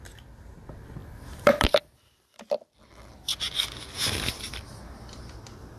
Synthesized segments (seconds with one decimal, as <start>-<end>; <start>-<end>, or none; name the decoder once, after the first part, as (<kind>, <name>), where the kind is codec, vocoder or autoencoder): 1.0-1.9 (vocoder, BigVGAN v2)